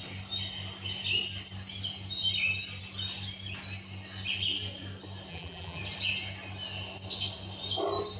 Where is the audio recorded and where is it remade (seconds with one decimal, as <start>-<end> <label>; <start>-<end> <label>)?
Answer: 0.0-5.3 recorded; 5.3-5.8 remade; 5.8-8.2 recorded